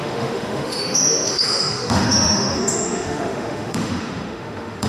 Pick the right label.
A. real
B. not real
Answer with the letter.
B